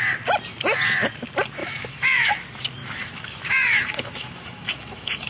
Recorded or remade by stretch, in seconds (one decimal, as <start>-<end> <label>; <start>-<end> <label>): 0.0-1.6 recorded; 1.6-2.3 remade; 2.3-2.8 recorded; 2.8-5.3 remade